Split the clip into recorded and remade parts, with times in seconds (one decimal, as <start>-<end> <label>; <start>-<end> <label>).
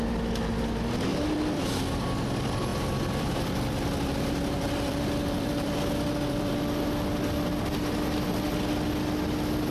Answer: 0.0-1.1 recorded; 1.1-1.7 remade; 1.7-2.7 recorded; 2.7-6.6 remade; 6.6-9.7 recorded